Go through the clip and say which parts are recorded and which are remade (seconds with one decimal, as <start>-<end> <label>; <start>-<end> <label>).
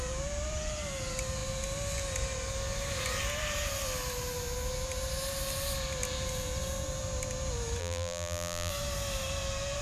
0.0-7.8 recorded; 7.8-8.7 remade; 8.7-9.8 recorded